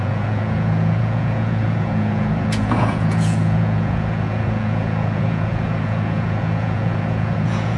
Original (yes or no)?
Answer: no